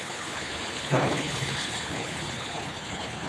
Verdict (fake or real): fake